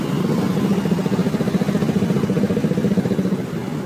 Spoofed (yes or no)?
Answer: no